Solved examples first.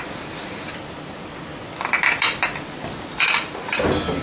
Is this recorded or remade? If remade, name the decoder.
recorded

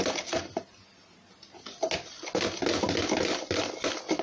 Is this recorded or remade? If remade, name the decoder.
recorded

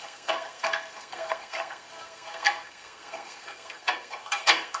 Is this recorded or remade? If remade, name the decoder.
remade, codec, SNAC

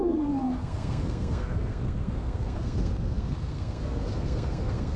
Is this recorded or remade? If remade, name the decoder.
remade, codec, SNAC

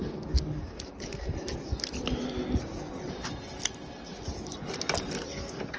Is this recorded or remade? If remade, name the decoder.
recorded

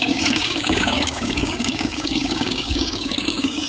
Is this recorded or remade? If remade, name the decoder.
remade, codec, DAC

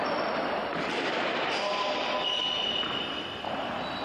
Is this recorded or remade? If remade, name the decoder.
recorded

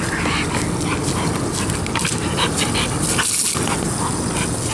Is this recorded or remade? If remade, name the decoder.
recorded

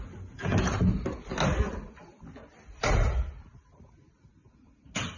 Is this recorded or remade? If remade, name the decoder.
recorded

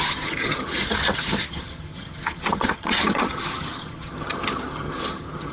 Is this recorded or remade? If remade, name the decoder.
remade, vocoder, HiFi-GAN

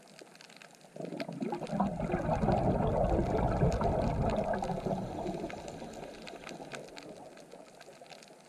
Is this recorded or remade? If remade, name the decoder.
recorded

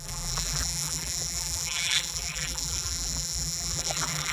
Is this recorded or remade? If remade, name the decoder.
remade, vocoder, BigVGAN v2